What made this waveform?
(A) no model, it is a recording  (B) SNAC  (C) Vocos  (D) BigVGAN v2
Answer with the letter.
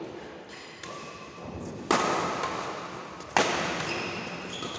A